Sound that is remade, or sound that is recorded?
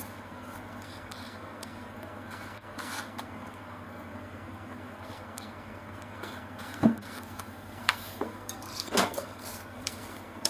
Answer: remade